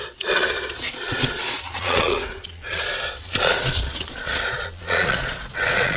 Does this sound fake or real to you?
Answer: fake